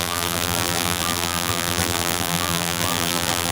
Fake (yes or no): yes